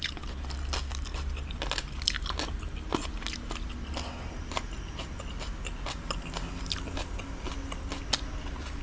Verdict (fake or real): real